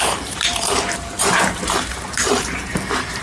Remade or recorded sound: remade